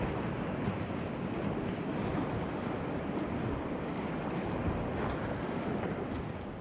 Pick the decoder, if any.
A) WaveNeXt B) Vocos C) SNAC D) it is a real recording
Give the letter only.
D